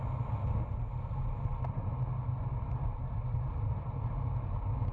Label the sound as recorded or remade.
recorded